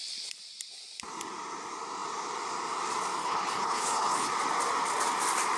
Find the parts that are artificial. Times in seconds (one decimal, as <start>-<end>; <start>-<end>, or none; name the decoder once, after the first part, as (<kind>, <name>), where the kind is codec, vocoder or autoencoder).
3.2-4.3 (codec, HILCodec)